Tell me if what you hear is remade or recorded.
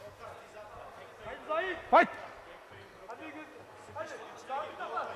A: recorded